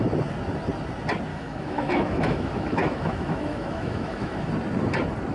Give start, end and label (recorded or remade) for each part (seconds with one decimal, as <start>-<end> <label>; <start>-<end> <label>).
0.0-1.3 recorded; 1.3-4.5 remade; 4.5-5.3 recorded